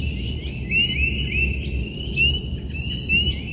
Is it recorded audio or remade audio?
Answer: recorded